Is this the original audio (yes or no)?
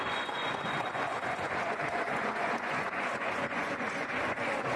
no